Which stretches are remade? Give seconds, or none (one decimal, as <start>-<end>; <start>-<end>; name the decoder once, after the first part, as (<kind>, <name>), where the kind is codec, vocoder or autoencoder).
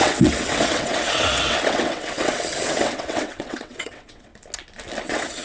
0.0-4.3 (vocoder, WaveNeXt); 5.0-5.4